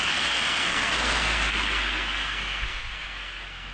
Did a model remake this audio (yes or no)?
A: yes